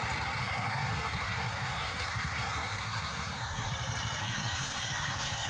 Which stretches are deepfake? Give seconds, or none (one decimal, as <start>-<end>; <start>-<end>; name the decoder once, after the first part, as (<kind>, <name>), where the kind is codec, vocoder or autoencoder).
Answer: 0.4-3.7 (codec, SNAC); 4.2-5.5